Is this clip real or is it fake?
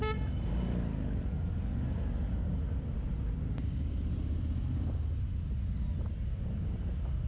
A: real